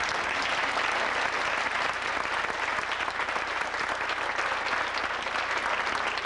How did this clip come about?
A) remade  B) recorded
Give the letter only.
B